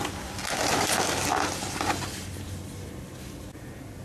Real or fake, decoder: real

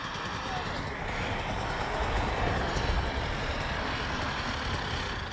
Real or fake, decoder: real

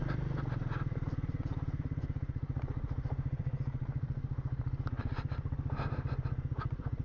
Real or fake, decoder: fake, vocoder, BigVGAN v2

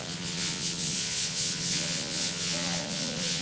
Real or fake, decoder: fake, vocoder, Vocos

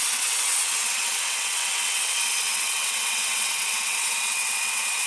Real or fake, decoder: fake, vocoder, WaveNeXt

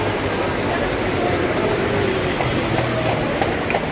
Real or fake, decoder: real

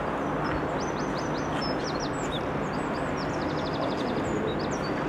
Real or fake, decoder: real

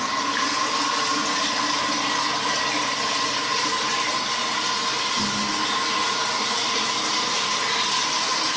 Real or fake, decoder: real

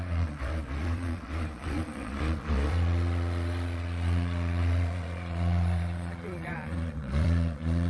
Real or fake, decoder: fake, vocoder, Vocos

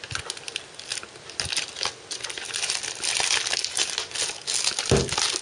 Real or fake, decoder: real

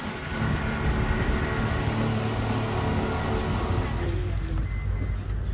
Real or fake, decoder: real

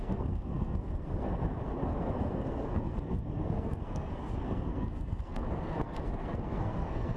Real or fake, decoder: fake, codec, SNAC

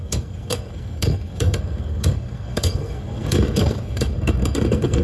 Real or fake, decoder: fake, codec, SNAC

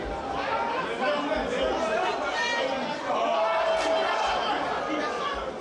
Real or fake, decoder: real